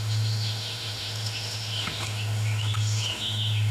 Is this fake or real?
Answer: fake